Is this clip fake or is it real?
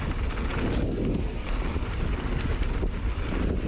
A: real